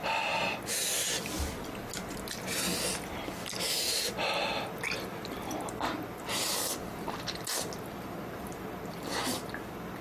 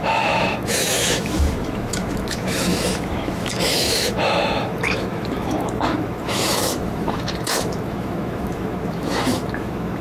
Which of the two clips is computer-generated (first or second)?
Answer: second